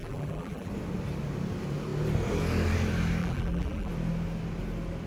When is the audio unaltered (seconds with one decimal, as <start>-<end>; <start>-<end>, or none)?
0.7-3.2; 3.9-5.1